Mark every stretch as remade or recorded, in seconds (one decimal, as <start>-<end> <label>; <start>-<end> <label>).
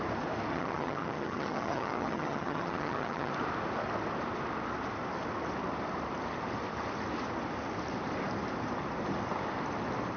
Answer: 0.0-0.5 recorded; 0.5-3.3 remade; 3.3-10.2 recorded